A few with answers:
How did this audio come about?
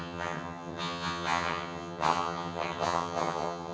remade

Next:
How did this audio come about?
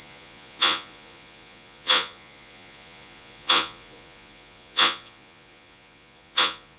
remade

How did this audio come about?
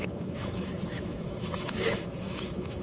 remade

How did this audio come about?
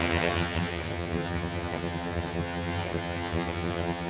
remade